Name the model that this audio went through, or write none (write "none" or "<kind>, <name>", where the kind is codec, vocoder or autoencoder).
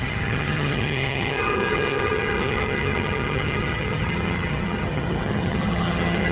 vocoder, HiFi-GAN